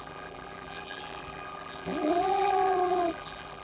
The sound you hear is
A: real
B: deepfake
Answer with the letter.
B